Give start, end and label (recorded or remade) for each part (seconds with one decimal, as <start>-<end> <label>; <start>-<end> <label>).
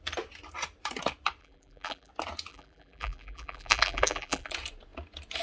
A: 0.0-1.4 recorded; 1.4-2.1 remade; 2.1-2.5 recorded; 2.5-4.5 remade; 4.5-5.4 recorded